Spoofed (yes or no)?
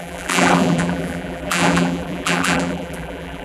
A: yes